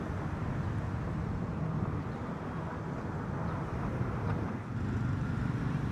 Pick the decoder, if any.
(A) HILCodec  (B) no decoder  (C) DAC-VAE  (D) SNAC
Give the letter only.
B